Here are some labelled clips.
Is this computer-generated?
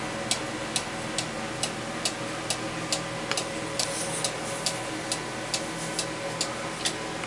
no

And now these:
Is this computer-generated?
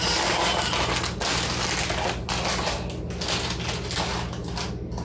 no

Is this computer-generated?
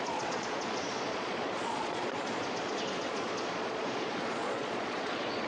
yes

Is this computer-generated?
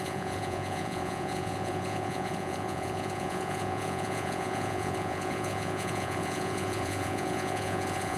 yes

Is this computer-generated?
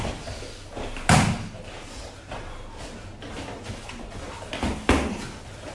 no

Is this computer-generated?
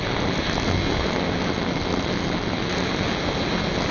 no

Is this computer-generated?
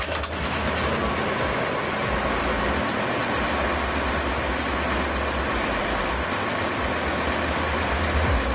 no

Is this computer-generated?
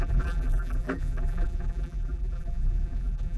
yes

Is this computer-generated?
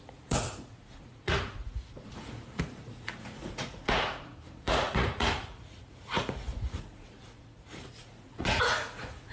yes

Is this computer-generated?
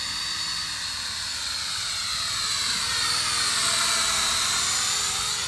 no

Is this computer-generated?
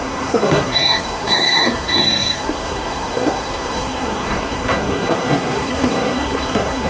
yes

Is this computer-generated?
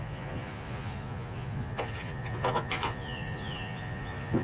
yes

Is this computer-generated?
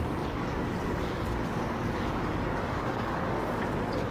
yes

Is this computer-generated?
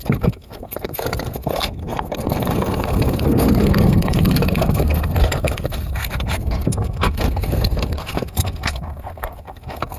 yes